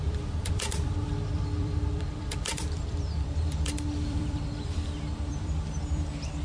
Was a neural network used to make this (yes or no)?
yes